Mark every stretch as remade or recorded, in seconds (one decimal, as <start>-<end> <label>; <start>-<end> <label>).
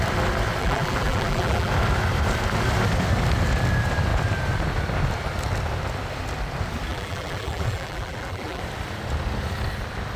0.0-0.6 recorded; 0.6-1.7 remade; 1.7-6.9 recorded; 6.9-8.6 remade; 8.6-10.2 recorded